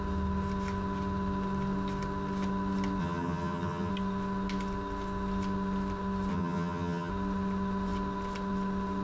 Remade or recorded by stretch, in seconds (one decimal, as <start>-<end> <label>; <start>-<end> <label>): 0.0-3.0 recorded; 3.0-3.9 remade; 3.9-6.3 recorded; 6.3-7.1 remade; 7.1-9.0 recorded